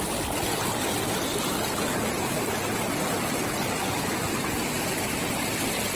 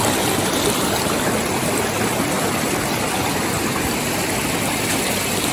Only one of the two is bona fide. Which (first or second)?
first